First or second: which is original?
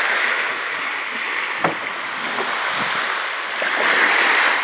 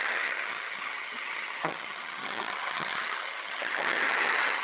first